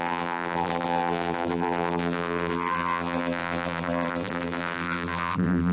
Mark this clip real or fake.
fake